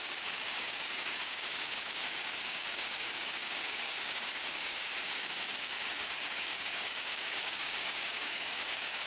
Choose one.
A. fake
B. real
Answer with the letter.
A